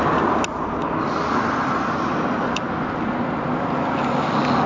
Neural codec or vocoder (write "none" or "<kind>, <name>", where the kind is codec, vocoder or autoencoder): none